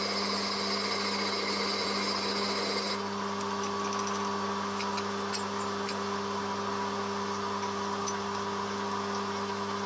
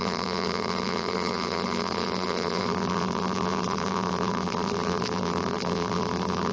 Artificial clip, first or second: second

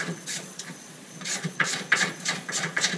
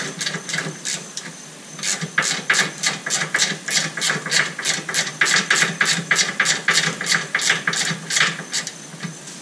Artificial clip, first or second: first